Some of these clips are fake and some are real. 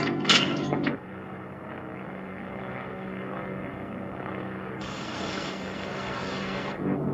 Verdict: fake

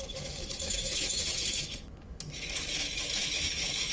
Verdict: fake